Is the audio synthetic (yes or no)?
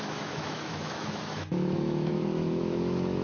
yes